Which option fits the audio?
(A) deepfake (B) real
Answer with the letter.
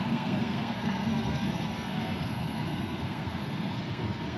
A